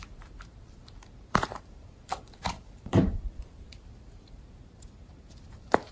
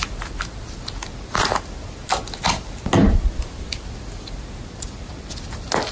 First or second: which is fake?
first